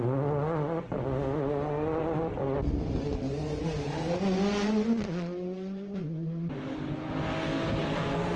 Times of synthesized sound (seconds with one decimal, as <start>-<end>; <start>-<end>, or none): none

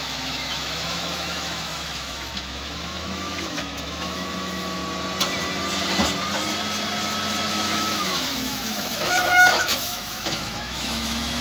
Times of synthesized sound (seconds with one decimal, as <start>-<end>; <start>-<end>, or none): 0.0-4.8; 7.5-11.4